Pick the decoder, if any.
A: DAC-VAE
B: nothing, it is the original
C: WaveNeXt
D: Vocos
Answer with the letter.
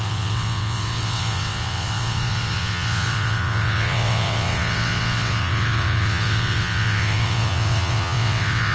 C